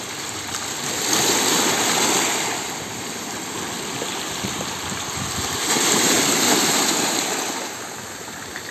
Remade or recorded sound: recorded